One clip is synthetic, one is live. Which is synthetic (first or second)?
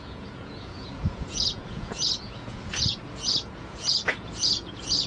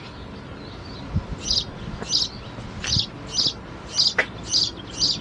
first